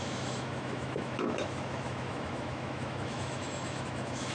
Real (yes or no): no